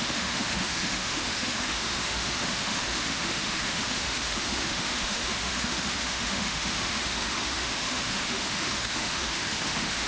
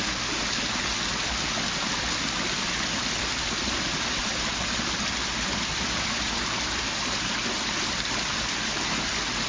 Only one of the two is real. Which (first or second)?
second